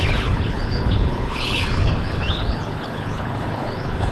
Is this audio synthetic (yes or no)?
yes